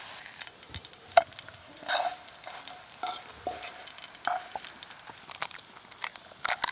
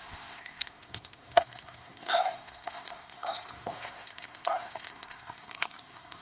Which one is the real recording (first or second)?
first